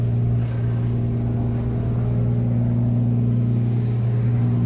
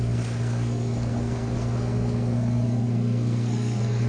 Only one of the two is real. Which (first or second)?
first